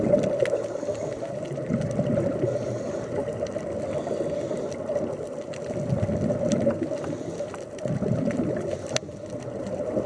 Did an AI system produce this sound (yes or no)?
no